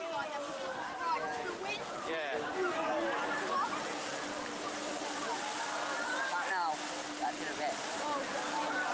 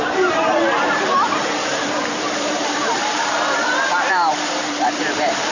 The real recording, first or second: first